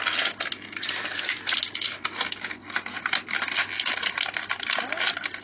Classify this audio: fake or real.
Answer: real